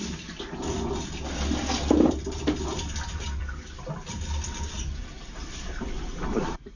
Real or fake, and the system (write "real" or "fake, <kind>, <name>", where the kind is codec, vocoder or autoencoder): fake, vocoder, BigVGAN v2